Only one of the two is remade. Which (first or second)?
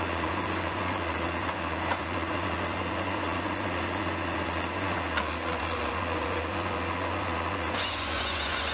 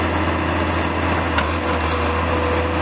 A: first